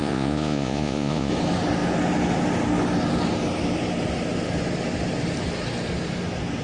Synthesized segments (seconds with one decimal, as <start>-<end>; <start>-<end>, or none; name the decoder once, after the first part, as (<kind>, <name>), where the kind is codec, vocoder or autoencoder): 0.0-1.3 (vocoder, Vocos)